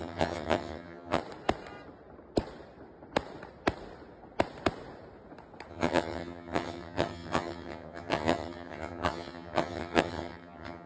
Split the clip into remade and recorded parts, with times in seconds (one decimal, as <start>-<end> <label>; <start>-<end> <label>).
0.0-1.2 remade; 1.2-5.7 recorded; 5.7-10.9 remade